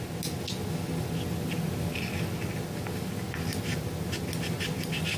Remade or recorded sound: recorded